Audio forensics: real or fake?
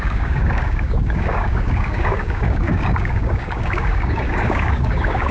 fake